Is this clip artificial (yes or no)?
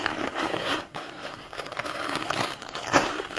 yes